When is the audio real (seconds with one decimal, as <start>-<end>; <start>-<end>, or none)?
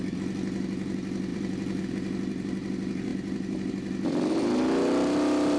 0.0-1.3; 1.9-5.6